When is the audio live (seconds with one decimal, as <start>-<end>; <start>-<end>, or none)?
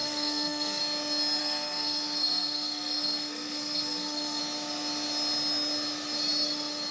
0.8-1.4; 4.4-6.9